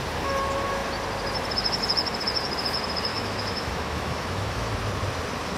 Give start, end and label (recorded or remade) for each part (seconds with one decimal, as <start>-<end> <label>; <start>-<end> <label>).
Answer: 0.0-3.1 recorded; 3.1-4.8 remade; 4.8-5.6 recorded